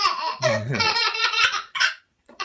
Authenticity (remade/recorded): remade